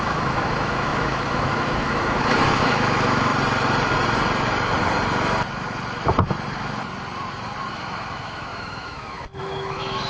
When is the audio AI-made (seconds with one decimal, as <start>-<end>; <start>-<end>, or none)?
0.0-3.3; 7.7-10.1

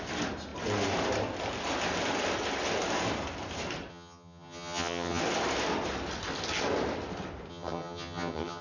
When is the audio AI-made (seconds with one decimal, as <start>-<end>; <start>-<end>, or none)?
3.9-5.2; 7.5-8.6

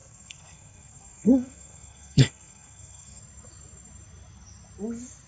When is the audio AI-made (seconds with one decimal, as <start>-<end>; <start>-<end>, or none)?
0.0-3.2

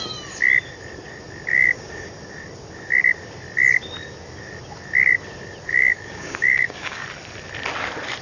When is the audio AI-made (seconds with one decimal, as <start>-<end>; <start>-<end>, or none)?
1.5-2.1; 5.7-7.0